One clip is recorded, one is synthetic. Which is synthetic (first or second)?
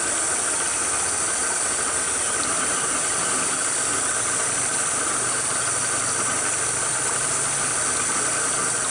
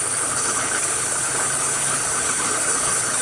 second